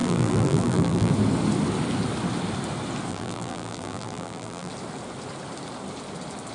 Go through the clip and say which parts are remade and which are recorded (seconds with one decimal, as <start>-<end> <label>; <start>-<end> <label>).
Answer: 0.0-1.1 remade; 1.1-3.1 recorded; 3.1-4.7 remade; 4.7-6.5 recorded